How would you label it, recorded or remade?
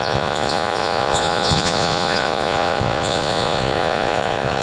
remade